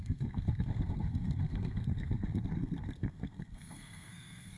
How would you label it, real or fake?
fake